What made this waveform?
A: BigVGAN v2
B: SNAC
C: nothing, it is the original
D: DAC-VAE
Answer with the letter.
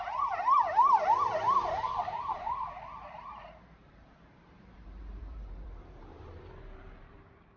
A